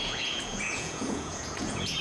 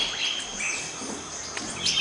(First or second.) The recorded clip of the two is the second